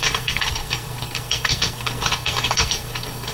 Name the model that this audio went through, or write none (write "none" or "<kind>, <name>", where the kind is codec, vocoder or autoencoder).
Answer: codec, SNAC